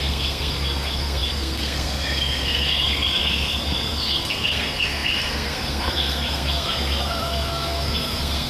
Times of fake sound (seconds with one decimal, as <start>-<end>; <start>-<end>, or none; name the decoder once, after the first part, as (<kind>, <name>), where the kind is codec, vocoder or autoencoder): 0.0-8.5 (codec, SNAC)